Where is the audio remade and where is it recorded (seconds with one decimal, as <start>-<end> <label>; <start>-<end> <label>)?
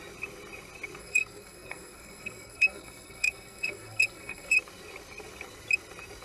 0.0-1.0 recorded; 1.0-4.5 remade; 4.5-6.2 recorded